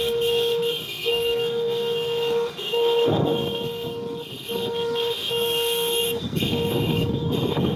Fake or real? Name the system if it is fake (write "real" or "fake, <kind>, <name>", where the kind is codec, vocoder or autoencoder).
fake, codec, SNAC